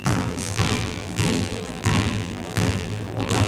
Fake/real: fake